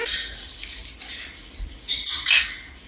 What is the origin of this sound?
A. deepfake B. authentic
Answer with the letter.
B